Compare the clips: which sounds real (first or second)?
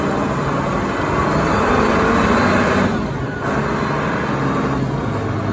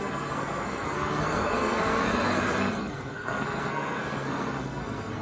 first